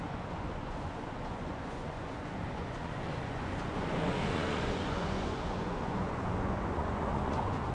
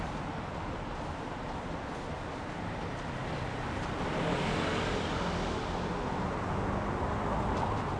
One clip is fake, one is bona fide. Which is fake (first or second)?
first